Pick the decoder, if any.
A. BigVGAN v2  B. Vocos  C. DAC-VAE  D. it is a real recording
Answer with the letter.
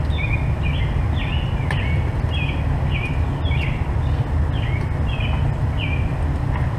D